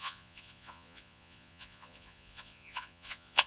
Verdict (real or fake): fake